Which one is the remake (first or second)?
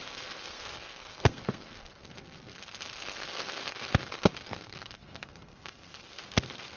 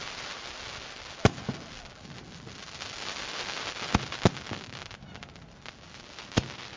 first